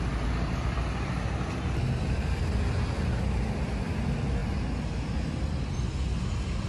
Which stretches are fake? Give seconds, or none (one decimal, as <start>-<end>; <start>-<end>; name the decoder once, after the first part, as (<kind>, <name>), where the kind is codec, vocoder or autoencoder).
none